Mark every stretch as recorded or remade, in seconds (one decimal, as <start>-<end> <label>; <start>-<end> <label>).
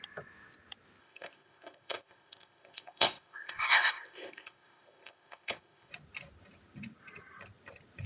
0.0-1.0 recorded; 1.0-5.9 remade; 5.9-8.1 recorded